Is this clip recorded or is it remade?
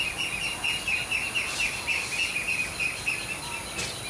recorded